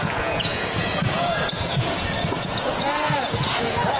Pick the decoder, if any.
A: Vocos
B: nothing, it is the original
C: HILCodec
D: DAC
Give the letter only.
A